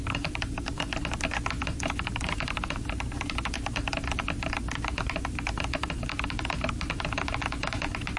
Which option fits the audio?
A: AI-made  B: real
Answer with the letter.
A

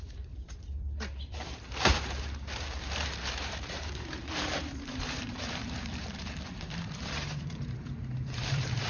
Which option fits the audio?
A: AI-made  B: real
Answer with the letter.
A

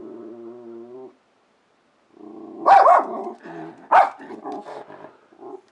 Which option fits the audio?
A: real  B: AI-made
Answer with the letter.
A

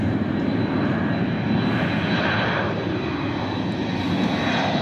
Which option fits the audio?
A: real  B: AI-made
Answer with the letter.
A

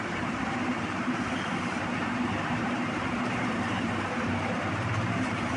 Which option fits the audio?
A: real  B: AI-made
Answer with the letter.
B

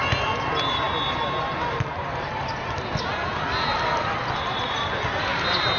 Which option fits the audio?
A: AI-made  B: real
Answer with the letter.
B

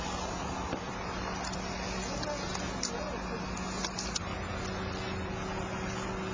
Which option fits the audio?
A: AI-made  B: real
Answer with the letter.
B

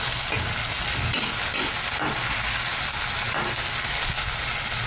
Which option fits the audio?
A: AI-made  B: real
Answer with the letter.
B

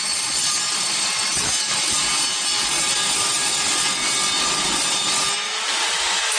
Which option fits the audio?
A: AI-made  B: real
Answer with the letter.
B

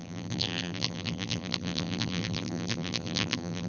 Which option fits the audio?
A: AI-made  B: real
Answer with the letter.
A